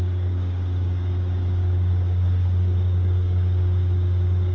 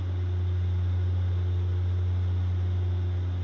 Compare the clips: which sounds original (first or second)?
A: second